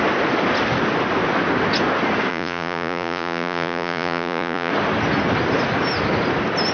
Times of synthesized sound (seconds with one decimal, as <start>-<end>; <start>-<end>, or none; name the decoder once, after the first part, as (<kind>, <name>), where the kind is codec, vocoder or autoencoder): 2.3-4.7 (vocoder, Vocos)